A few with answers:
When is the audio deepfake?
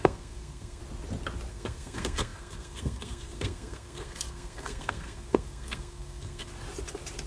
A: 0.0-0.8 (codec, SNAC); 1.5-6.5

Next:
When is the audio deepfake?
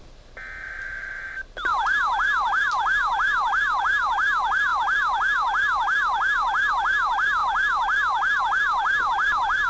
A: 0.0-4.7 (vocoder, BigVGAN v2); 6.7-7.4; 8.4-9.7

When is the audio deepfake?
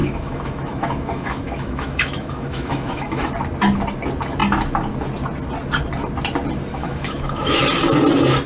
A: 0.0-3.3 (autoencoder, DAC-VAE); 6.8-7.6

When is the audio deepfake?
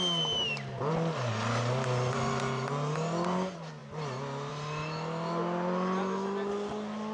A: none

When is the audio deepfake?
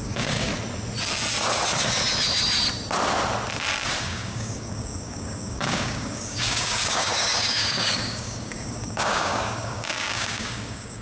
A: 0.0-0.5 (codec, DAC); 4.0-11.0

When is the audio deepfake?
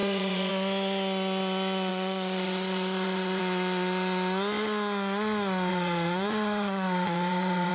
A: 0.0-0.5 (vocoder, Vocos); 1.9-3.4; 5.7-7.7